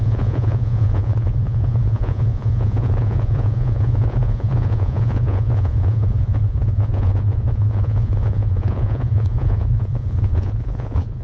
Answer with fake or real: fake